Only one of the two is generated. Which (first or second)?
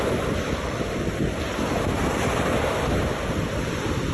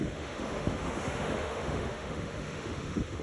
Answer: second